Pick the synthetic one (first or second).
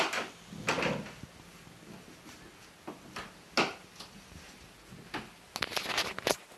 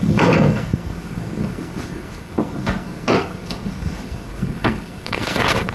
second